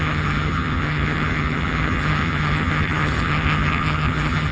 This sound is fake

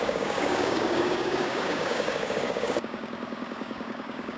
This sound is fake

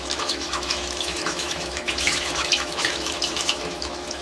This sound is fake